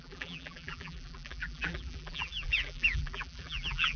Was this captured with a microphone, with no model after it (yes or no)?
no